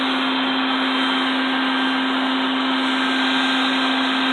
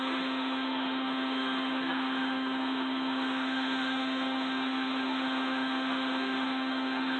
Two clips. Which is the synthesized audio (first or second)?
second